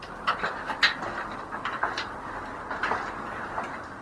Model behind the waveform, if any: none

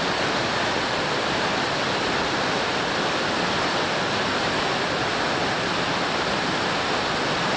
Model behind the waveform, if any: none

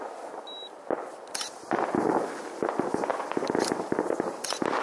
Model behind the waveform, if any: none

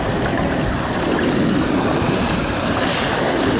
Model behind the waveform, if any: none